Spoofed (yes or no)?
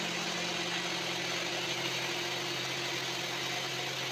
no